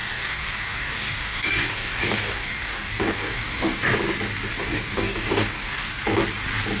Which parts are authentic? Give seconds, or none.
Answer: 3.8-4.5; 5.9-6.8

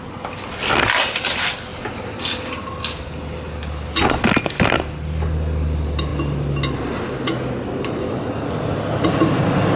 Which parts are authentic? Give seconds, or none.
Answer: 0.0-9.8

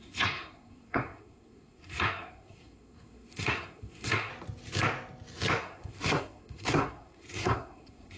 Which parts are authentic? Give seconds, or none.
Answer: 4.3-5.6

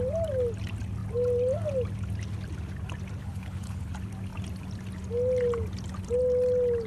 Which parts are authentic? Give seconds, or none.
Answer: 0.0-3.2; 3.9-6.9